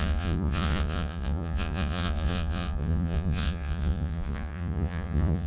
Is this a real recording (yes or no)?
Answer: no